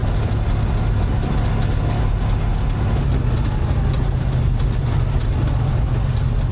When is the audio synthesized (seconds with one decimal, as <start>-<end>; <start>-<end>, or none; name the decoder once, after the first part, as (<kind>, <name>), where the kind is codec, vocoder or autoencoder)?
none